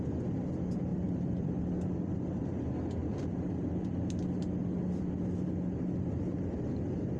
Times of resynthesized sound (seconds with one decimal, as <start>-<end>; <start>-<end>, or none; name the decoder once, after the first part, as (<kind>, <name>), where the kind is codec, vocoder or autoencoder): 0.9-1.5 (vocoder, BigVGAN v2)